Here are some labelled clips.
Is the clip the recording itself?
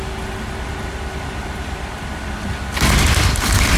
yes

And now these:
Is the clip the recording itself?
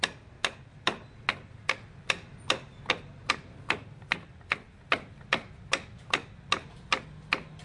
yes